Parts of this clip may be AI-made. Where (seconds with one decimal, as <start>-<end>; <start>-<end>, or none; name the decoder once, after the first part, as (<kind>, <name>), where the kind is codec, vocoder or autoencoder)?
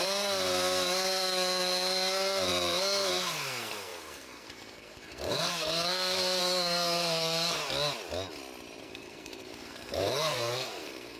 0.0-7.6 (codec, SNAC); 8.8-11.2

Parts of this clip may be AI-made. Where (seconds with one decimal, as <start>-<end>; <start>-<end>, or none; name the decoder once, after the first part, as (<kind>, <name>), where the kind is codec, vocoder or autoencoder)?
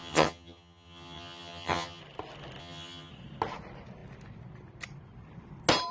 0.0-2.0 (vocoder, HiFi-GAN); 2.6-3.1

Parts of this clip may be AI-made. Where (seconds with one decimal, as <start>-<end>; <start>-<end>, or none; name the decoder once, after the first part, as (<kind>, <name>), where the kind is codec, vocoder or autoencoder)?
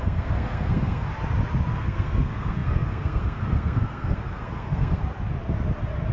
0.0-1.1 (codec, SNAC); 1.7-5.0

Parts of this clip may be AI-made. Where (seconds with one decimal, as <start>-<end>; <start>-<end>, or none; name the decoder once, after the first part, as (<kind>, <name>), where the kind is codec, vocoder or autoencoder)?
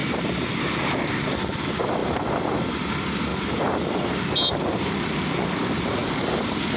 1.5-3.3 (vocoder, BigVGAN v2); 4.3-6.8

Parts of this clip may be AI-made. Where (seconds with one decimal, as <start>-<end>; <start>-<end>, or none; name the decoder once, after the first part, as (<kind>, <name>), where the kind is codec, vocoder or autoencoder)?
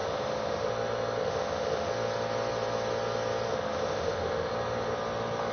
0.0-0.7 (autoencoder, DAC-VAE); 1.2-1.9; 3.5-4.5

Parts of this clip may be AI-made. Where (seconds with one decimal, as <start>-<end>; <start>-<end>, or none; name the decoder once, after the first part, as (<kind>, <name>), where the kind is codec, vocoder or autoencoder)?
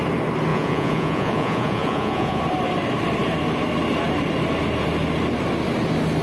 0.5-2.4 (vocoder, Vocos)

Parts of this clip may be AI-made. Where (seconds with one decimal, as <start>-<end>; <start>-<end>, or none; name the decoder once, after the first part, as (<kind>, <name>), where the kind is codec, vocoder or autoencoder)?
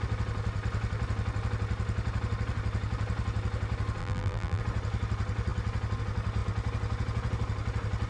4.0-4.6 (vocoder, BigVGAN v2)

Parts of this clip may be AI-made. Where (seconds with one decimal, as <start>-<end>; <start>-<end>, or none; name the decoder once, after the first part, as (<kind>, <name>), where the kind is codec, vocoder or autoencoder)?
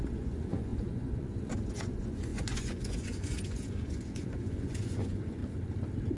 0.0-5.4 (vocoder, Vocos)